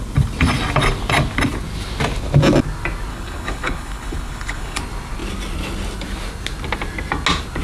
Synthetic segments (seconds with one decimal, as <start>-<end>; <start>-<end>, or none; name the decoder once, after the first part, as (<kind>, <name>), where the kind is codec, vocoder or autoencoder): 3.1-4.8 (codec, HILCodec)